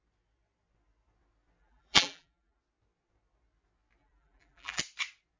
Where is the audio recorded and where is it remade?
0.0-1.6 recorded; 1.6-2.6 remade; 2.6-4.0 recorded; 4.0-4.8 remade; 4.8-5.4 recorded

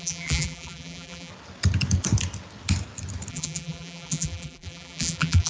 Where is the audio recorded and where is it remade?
0.0-1.3 remade; 1.3-3.3 recorded; 3.3-5.5 remade

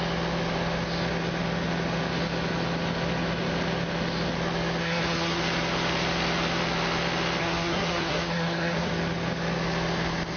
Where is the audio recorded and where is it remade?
0.0-4.8 recorded; 4.8-5.4 remade; 5.4-7.4 recorded; 7.4-8.9 remade; 8.9-10.4 recorded